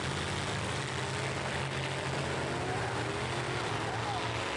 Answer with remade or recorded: recorded